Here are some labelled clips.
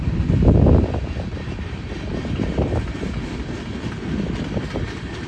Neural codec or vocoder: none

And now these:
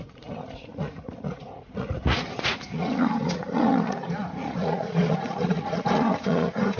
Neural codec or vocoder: vocoder, Vocos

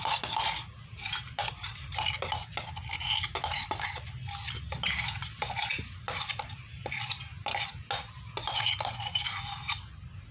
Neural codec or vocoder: none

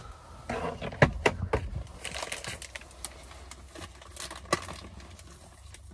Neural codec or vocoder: none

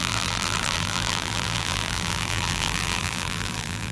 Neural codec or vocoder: vocoder, BigVGAN v2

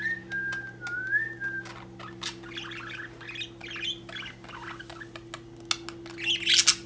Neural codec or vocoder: none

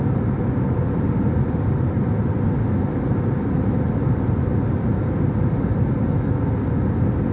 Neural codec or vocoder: none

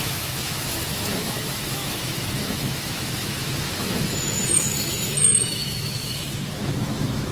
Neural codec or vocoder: autoencoder, DAC-VAE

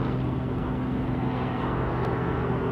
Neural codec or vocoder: codec, SNAC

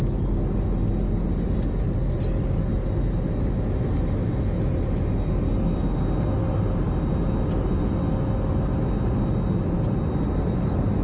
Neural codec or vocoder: none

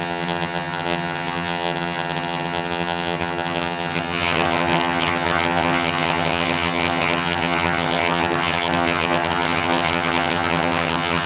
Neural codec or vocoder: vocoder, HiFi-GAN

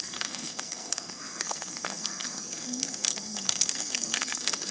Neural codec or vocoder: codec, SNAC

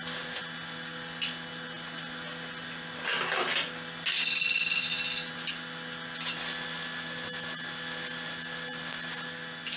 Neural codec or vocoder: none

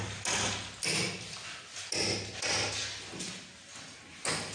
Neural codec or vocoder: none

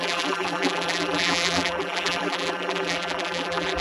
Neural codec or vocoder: vocoder, BigVGAN v2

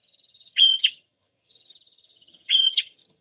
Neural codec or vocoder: vocoder, HiFi-GAN